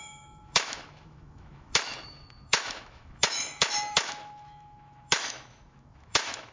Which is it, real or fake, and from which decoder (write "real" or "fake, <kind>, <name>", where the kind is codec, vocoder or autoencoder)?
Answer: fake, autoencoder, DAC-VAE